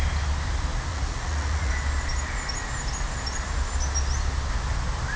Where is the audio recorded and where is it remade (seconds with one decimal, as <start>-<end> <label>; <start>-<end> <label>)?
0.0-0.9 recorded; 0.9-1.7 remade; 1.7-5.2 recorded

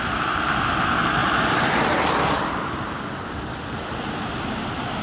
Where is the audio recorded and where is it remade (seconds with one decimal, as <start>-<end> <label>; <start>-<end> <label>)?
0.0-5.0 recorded

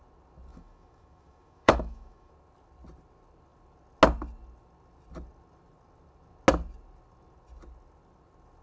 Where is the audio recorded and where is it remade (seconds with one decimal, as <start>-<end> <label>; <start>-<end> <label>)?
0.0-0.5 recorded; 0.5-2.3 remade; 2.3-8.6 recorded

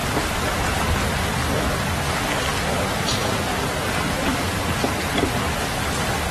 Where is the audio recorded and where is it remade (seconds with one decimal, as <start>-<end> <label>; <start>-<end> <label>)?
0.0-0.9 remade; 0.9-1.4 recorded; 1.4-5.2 remade; 5.2-6.3 recorded